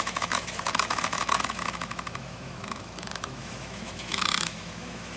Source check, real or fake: fake